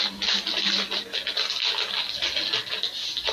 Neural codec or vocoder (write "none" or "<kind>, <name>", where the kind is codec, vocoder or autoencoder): none